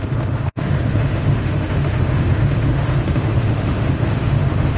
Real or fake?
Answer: fake